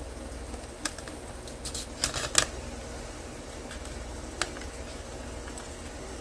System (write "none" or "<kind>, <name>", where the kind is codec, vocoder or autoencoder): none